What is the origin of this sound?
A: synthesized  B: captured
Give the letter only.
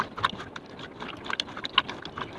B